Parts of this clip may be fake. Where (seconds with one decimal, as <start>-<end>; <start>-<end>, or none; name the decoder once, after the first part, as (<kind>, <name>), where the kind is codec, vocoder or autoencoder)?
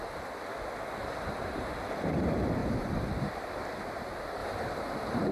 2.6-3.2 (vocoder, BigVGAN v2); 4.4-5.3